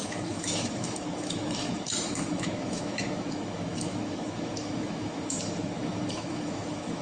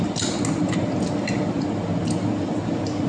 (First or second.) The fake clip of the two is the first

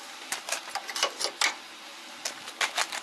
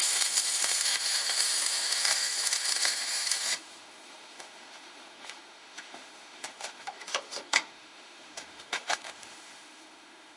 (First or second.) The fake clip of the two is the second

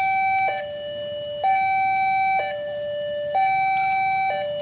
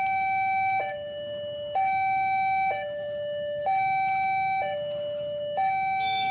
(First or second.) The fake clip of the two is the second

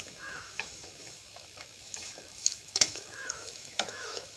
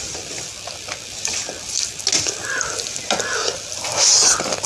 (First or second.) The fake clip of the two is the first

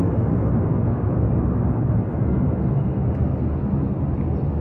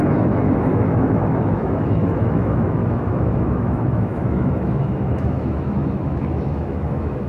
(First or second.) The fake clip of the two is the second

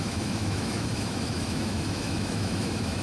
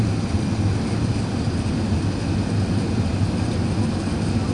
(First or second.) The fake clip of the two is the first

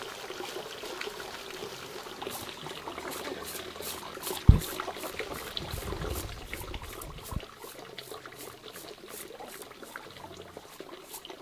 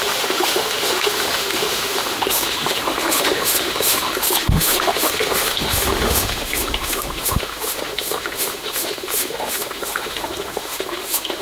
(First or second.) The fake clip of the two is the second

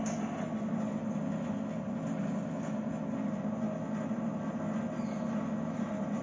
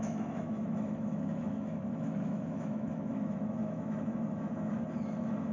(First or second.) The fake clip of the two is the second